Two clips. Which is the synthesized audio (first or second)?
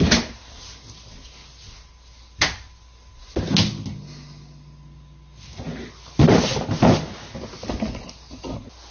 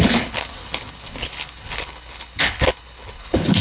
second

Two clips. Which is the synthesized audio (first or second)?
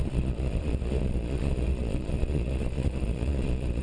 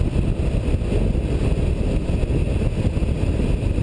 first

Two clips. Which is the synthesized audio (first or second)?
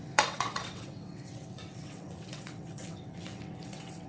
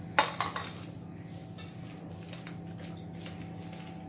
first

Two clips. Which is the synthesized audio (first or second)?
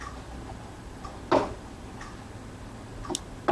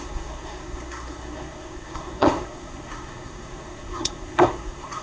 second